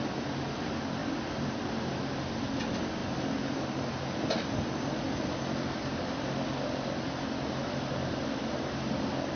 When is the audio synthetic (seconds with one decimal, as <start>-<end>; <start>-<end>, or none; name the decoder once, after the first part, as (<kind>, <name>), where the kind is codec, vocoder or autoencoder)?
none